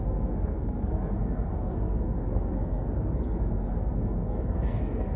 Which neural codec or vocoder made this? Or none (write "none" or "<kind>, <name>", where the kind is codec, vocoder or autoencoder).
codec, SNAC